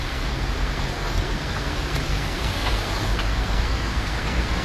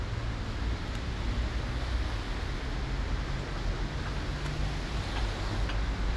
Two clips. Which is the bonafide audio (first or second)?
second